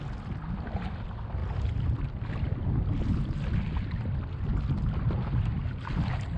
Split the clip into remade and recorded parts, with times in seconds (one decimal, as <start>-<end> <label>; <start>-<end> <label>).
0.0-6.4 recorded